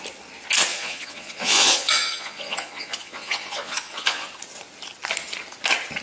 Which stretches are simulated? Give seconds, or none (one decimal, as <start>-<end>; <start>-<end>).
0.7-4.3